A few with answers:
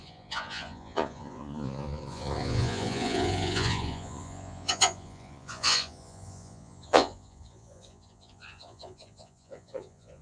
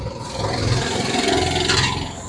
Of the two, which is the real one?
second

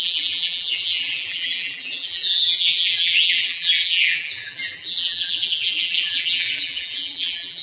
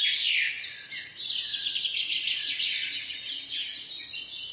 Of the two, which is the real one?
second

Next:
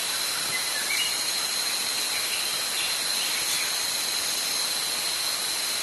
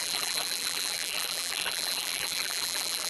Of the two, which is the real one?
first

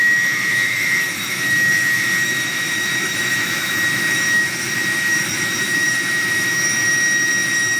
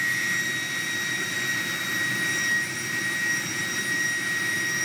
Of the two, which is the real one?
second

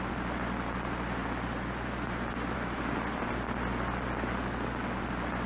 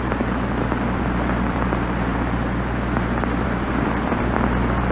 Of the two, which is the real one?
first